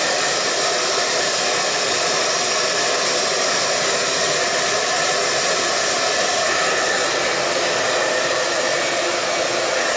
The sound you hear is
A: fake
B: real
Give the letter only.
B